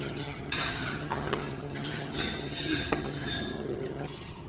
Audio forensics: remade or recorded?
remade